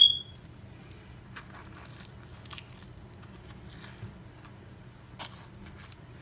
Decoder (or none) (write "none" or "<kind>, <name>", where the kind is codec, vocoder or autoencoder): none